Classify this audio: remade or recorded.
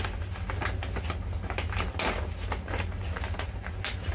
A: recorded